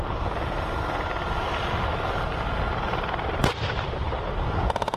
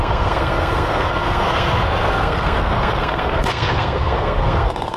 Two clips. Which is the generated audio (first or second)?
second